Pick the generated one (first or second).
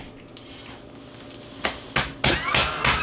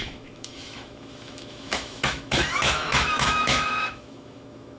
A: second